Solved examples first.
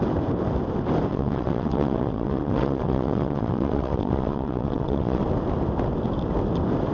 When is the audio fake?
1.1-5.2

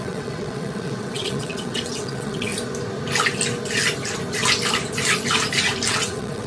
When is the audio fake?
0.0-2.5; 5.9-6.5